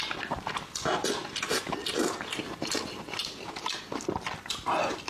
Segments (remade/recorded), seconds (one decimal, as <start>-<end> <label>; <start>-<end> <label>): 0.0-5.1 recorded